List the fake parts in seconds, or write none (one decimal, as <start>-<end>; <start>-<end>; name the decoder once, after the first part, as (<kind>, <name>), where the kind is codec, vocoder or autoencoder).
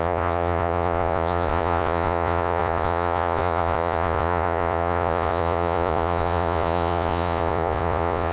0.0-8.3 (vocoder, Vocos)